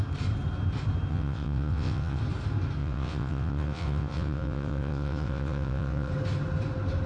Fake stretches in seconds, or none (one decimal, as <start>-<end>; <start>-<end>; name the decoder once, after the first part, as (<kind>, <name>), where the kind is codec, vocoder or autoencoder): 1.1-2.2 (vocoder, WaveNeXt); 2.8-6.1